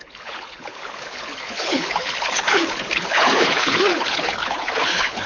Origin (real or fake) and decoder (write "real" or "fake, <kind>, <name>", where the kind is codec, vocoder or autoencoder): fake, codec, HILCodec